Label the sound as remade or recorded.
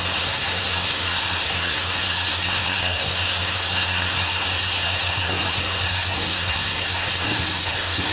remade